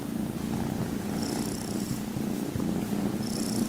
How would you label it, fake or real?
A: real